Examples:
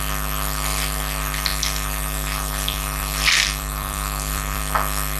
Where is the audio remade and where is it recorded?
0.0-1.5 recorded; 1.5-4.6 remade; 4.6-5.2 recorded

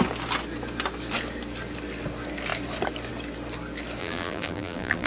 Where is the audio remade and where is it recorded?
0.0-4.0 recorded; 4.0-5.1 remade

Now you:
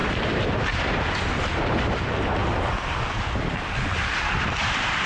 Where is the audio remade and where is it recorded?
0.0-2.4 remade; 2.4-4.1 recorded; 4.1-5.1 remade

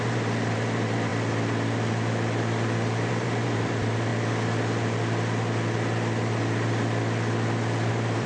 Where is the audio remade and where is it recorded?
0.0-1.1 remade; 1.1-3.1 recorded; 3.1-4.1 remade; 4.1-7.9 recorded; 7.9-8.3 remade